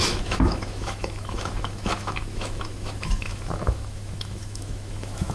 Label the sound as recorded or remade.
remade